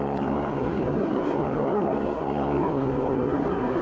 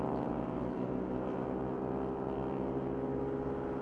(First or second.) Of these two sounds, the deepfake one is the first